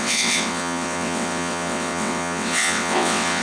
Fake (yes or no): yes